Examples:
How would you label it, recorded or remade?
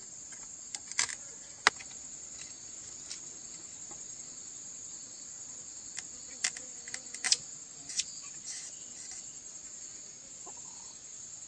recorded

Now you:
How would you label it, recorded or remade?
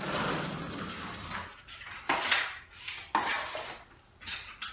recorded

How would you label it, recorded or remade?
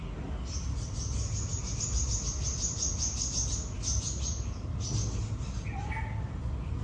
recorded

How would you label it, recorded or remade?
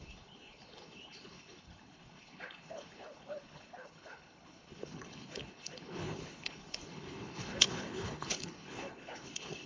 remade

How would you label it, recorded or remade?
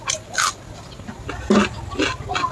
recorded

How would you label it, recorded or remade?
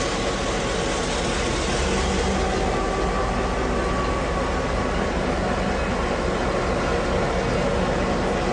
recorded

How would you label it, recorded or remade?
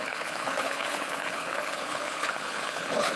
remade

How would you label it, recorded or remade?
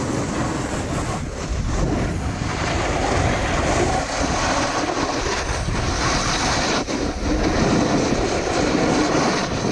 recorded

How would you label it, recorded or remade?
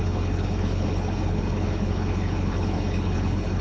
remade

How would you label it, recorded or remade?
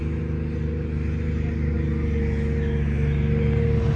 recorded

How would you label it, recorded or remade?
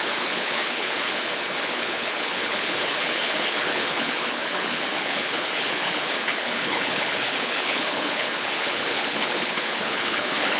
remade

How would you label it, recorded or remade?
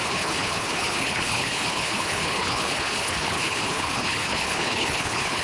remade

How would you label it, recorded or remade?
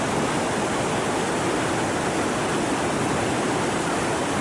recorded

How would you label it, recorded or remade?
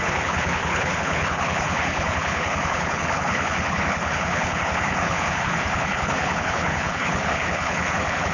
remade